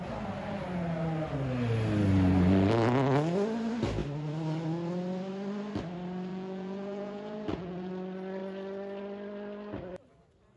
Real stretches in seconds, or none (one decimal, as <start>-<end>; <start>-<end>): 0.0-6.3; 7.9-10.6